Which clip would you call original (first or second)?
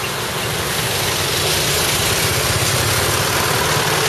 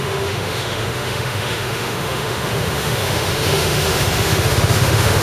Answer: first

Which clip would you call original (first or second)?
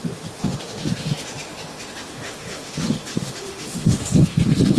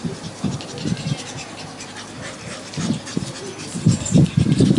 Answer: second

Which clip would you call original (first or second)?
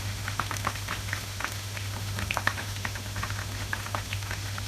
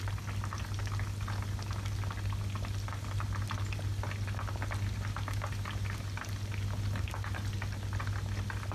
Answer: second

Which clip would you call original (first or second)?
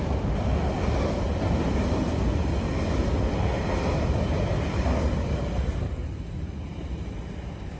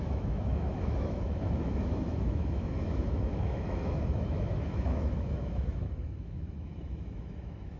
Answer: first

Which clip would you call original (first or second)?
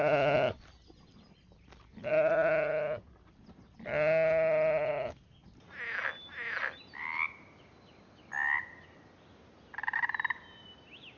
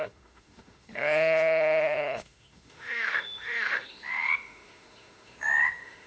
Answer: first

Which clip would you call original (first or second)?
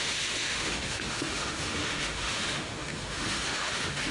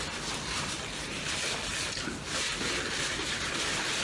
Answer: second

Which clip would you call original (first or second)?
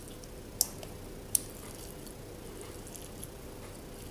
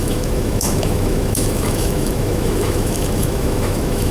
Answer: first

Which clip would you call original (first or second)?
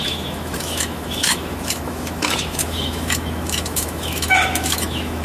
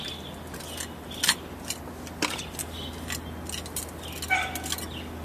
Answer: second